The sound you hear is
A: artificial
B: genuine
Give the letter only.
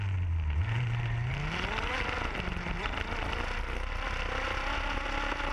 B